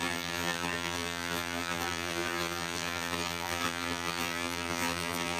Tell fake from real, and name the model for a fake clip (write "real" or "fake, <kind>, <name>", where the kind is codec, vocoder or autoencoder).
fake, vocoder, BigVGAN v2